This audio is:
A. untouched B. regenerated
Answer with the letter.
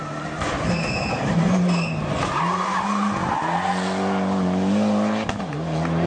A